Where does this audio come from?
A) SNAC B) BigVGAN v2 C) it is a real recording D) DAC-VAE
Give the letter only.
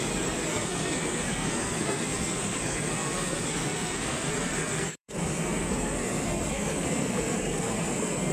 A